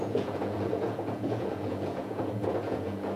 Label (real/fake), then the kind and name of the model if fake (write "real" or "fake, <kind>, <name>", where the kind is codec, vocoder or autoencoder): fake, vocoder, Vocos